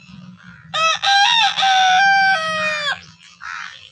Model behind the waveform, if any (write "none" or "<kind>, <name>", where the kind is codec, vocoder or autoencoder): vocoder, BigVGAN v2